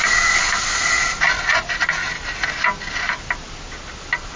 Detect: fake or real real